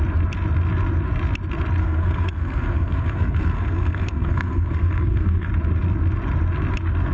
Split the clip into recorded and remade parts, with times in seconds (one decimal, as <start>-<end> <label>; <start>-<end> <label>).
0.0-1.8 recorded; 1.8-5.5 remade; 5.5-7.1 recorded